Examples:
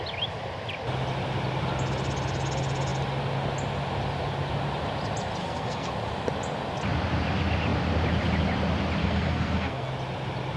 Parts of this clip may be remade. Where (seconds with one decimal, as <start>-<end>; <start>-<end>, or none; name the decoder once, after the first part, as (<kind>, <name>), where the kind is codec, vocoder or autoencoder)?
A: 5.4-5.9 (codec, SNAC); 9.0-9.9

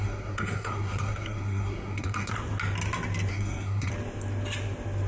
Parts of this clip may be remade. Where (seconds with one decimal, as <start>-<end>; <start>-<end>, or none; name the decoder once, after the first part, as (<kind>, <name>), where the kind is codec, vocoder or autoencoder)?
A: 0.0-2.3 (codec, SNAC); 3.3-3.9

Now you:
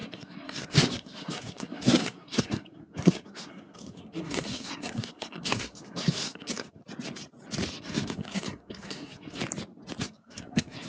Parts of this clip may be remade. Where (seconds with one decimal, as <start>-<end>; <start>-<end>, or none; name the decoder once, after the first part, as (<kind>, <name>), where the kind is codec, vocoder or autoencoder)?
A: 0.0-6.8 (codec, SNAC); 7.8-9.4; 10.0-10.9

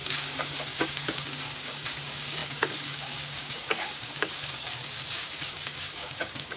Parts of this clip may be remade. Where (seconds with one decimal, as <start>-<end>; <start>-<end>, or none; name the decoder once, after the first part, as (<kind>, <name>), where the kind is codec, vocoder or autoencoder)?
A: 0.0-6.6 (codec, DAC)

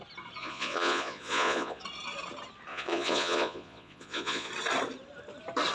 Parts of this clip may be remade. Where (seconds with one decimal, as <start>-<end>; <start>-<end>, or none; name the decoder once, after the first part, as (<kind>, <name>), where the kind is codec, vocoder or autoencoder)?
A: 0.4-1.8 (vocoder, Vocos); 2.7-4.5

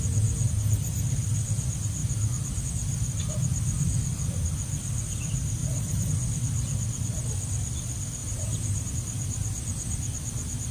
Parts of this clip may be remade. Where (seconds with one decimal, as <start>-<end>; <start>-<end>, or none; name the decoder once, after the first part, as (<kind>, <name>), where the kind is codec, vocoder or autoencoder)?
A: 5.6-6.1 (vocoder, BigVGAN v2); 8.2-8.9